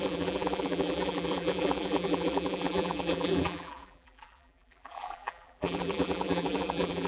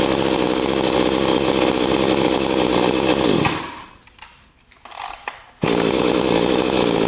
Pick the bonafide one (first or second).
second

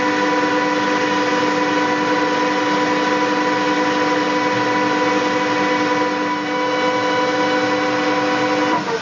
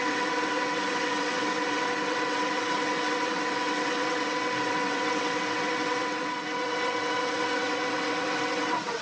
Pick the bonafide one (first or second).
first